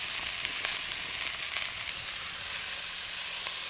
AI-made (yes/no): no